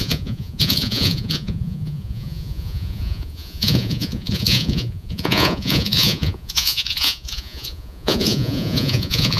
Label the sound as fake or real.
fake